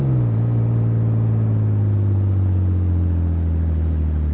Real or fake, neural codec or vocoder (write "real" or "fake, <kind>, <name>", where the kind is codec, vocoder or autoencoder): real